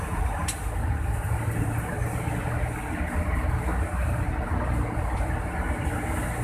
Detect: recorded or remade recorded